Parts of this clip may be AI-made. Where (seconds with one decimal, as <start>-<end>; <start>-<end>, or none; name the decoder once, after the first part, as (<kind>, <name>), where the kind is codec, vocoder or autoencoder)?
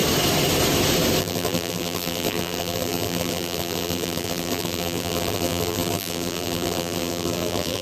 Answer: 1.2-7.8 (vocoder, BigVGAN v2)